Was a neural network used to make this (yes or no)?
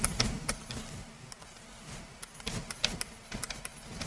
no